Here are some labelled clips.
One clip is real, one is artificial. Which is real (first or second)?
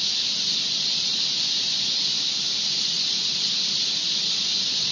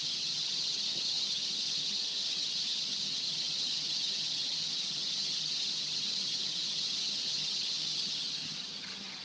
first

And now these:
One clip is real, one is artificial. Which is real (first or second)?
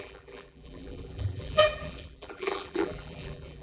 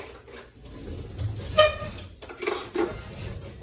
second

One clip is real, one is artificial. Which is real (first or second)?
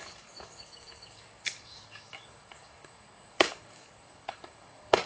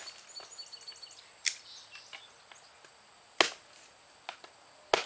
second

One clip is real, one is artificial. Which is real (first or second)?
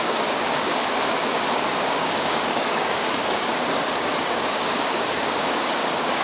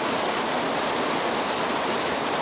second